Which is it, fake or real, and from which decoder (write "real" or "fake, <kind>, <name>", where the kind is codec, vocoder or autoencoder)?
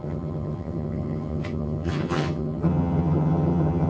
fake, vocoder, HiFi-GAN